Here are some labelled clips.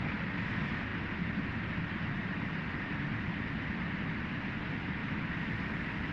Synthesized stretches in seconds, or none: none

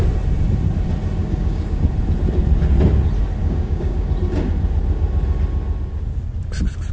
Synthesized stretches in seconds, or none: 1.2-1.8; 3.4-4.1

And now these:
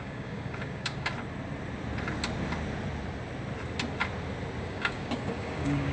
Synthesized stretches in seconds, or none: 0.0-1.1; 4.6-5.9

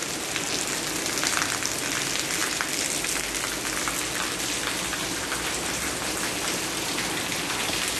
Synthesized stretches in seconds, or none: none